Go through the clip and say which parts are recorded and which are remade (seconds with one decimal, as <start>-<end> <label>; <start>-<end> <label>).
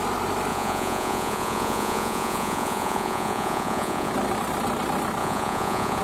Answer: 0.0-0.5 recorded; 0.5-4.1 remade; 4.1-5.2 recorded; 5.2-6.0 remade